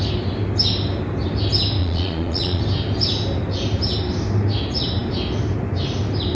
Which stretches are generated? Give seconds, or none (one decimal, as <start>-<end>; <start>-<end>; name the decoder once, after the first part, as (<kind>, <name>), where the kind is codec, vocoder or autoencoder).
1.8-2.6 (vocoder, Vocos)